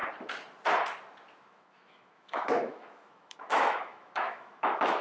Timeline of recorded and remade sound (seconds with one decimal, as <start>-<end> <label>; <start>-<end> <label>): 0.0-1.4 recorded; 1.4-5.0 remade